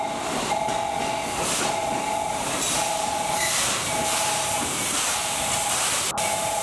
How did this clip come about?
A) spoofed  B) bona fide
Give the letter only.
B